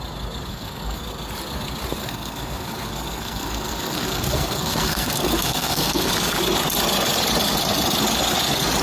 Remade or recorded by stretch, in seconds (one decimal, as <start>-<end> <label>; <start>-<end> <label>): 0.0-0.5 recorded; 0.5-1.0 remade; 1.0-2.0 recorded; 2.0-6.1 remade; 6.1-8.8 recorded